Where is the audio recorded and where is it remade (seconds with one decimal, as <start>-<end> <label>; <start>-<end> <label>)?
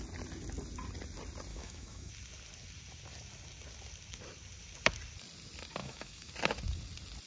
0.0-1.5 recorded; 1.5-2.1 remade; 2.1-5.8 recorded; 5.8-6.3 remade; 6.3-7.3 recorded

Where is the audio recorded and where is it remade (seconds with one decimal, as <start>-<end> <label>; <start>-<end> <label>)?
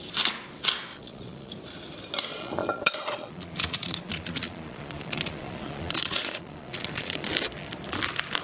0.0-0.9 recorded; 0.9-1.5 remade; 1.5-2.3 recorded; 2.3-7.3 remade; 7.3-8.4 recorded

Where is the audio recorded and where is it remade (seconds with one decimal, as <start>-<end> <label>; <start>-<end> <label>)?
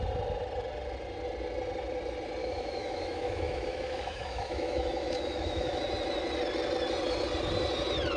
0.0-2.4 recorded; 2.4-5.8 remade; 5.8-8.2 recorded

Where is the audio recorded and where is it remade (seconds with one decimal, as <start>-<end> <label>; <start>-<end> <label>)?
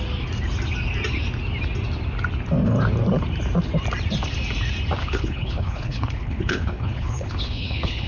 0.0-5.0 recorded; 5.0-8.1 remade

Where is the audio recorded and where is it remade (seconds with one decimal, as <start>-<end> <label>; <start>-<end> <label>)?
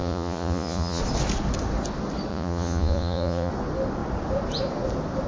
0.0-1.0 remade; 1.0-2.3 recorded; 2.3-3.5 remade; 3.5-5.3 recorded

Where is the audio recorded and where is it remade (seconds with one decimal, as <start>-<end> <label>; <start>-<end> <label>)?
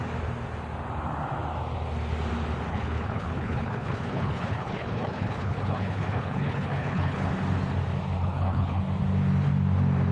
0.0-2.7 recorded; 2.7-7.3 remade; 7.3-8.2 recorded; 8.2-8.8 remade; 8.8-10.1 recorded